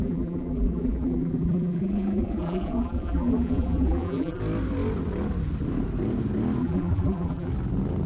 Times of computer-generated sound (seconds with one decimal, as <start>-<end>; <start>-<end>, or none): 0.0-4.4; 6.6-7.5